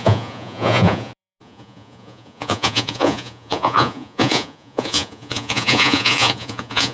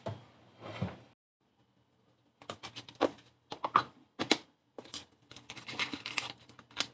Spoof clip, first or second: first